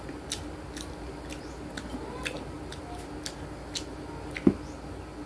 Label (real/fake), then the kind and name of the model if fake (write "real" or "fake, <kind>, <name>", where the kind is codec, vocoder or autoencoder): real